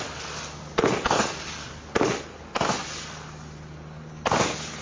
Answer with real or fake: real